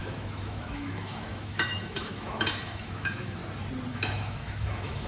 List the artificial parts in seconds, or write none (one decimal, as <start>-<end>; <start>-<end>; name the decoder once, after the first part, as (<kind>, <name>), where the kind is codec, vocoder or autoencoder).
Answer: 0.0-3.4 (autoencoder, DAC-VAE); 3.9-5.1